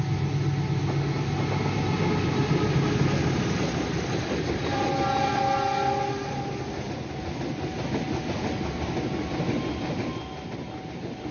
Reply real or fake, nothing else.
real